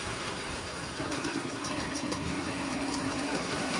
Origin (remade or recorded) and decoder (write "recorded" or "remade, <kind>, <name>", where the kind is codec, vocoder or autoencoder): remade, codec, SNAC